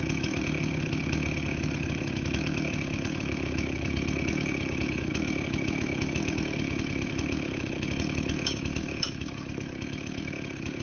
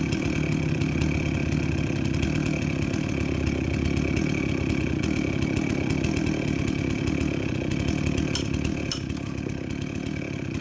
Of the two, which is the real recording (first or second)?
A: second